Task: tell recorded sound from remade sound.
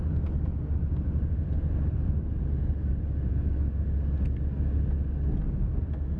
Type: recorded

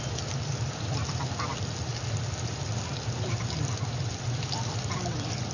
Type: remade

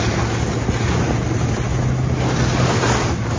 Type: recorded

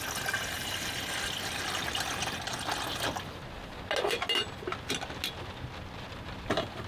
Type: recorded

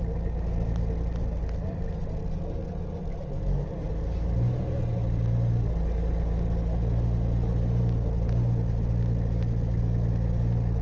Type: recorded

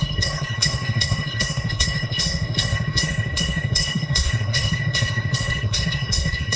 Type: remade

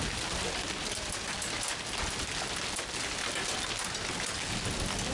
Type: recorded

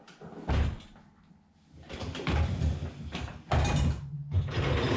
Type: recorded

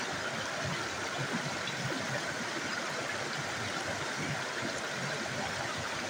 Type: recorded